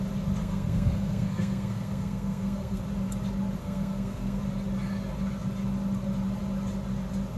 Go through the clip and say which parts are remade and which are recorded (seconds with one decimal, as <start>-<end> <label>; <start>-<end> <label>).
0.0-0.4 recorded; 0.4-2.8 remade; 2.8-3.6 recorded; 3.6-4.4 remade; 4.4-7.4 recorded